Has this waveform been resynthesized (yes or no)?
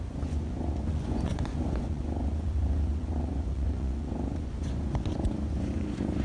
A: yes